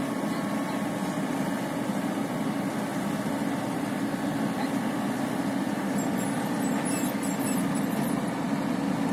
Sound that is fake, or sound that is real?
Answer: real